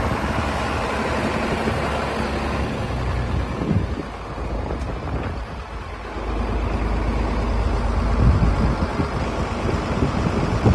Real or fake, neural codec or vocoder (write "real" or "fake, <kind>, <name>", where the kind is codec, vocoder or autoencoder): real